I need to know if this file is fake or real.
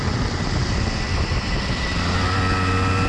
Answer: real